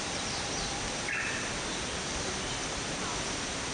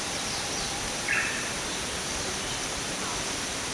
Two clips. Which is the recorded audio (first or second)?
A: first